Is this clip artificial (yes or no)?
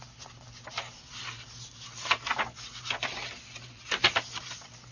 no